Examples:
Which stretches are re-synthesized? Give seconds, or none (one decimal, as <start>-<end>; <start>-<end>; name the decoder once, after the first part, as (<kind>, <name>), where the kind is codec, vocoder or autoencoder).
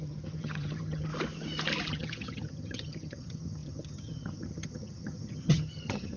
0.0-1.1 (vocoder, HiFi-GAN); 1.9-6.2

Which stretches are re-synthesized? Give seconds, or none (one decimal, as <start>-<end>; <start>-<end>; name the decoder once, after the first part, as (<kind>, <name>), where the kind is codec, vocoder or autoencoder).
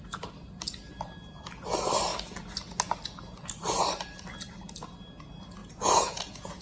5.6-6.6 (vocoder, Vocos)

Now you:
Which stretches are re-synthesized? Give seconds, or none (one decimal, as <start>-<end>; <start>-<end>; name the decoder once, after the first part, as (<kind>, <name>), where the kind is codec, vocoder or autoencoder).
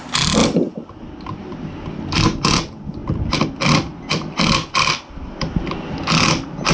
0.4-1.4 (vocoder, BigVGAN v2); 3.0-6.3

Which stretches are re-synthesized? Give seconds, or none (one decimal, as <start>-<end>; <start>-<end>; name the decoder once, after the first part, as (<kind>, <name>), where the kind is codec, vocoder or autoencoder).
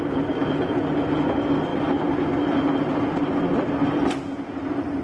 none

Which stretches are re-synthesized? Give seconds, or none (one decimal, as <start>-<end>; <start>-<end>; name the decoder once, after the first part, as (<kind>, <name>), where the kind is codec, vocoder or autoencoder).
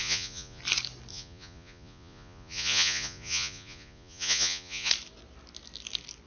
0.0-0.6 (vocoder, Vocos); 1.1-4.9